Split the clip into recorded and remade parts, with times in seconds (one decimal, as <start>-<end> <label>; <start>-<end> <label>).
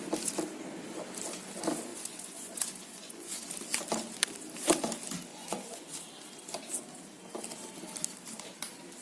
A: 0.0-1.9 recorded; 1.9-3.5 remade; 3.5-5.3 recorded; 5.3-5.9 remade; 5.9-9.0 recorded